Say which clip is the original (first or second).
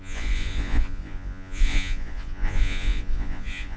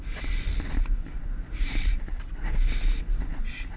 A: second